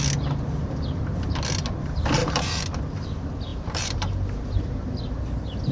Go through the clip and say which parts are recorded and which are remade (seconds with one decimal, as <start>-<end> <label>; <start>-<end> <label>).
0.0-2.2 recorded; 2.2-2.8 remade; 2.8-3.5 recorded; 3.5-4.8 remade; 4.8-5.7 recorded